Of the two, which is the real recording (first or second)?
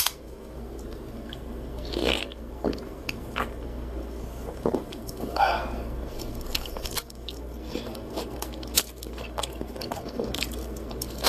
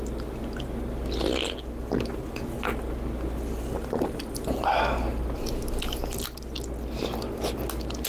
second